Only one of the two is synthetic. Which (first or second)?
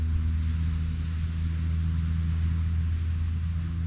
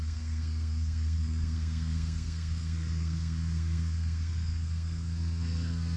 second